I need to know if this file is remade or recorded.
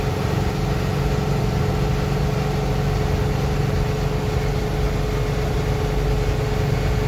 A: recorded